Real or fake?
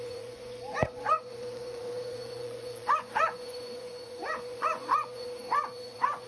fake